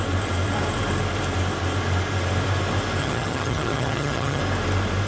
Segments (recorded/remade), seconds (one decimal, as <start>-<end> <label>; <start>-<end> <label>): 0.0-3.0 recorded; 3.0-4.4 remade; 4.4-5.1 recorded